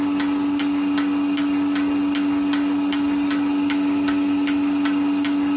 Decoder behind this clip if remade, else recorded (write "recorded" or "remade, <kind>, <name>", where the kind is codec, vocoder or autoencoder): recorded